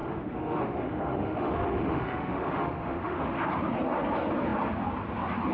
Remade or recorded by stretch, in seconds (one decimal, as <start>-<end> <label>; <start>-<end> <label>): 0.0-3.3 remade; 3.3-5.5 recorded